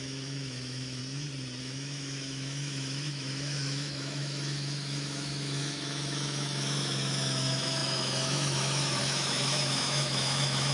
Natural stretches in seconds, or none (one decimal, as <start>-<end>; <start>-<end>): 1.0-1.6